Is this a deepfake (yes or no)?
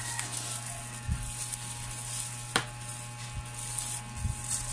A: no